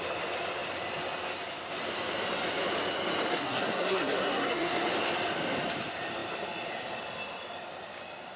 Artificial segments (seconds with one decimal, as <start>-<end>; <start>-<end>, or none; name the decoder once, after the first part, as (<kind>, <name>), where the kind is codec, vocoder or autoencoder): 3.3-4.9 (codec, SNAC)